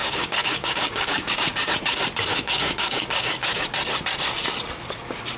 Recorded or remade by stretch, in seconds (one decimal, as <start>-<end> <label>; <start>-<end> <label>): 0.0-1.7 remade; 1.7-2.3 recorded; 2.3-3.6 remade; 3.6-5.4 recorded